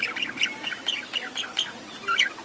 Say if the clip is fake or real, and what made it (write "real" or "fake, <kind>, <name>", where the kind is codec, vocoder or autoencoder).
real